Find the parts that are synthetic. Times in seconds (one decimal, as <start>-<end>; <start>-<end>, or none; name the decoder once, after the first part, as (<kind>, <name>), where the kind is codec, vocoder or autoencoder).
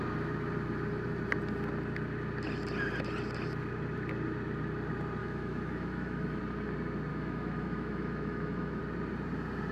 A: 5.2-6.4 (autoencoder, DAC-VAE); 7.1-8.8